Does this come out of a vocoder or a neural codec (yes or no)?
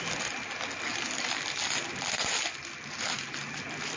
no